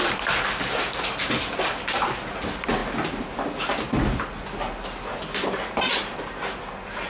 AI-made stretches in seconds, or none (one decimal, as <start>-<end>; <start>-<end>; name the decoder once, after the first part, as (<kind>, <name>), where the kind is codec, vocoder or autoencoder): none